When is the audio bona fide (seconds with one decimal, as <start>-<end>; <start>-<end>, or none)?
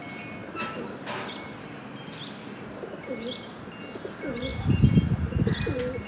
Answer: 0.0-0.4; 2.8-6.1